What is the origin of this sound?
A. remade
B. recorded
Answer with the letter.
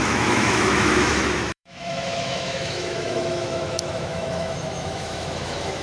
A